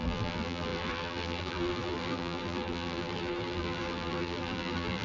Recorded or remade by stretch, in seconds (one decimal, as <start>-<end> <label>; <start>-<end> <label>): 0.0-5.0 remade